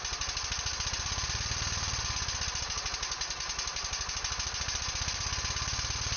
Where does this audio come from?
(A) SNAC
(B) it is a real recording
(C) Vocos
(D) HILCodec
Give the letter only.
B